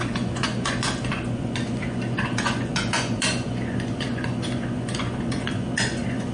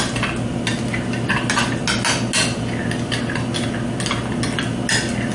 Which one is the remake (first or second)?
first